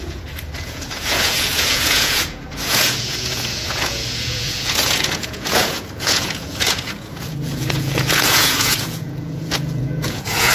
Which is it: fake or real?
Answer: fake